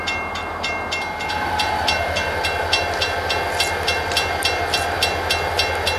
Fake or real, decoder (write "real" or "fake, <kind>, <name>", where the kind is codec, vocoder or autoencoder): real